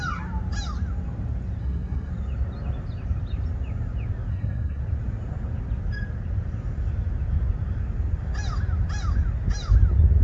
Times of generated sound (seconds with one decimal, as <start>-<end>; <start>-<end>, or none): 1.6-2.1; 4.3-4.8